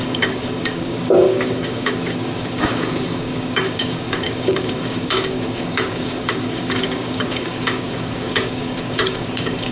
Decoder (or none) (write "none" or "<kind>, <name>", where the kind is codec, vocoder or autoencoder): codec, DAC